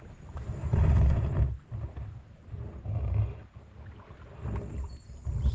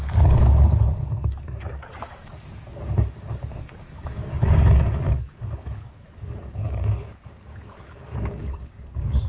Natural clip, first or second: first